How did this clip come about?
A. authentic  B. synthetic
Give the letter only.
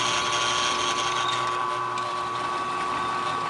A